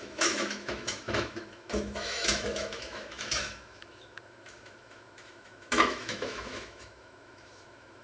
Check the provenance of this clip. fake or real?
fake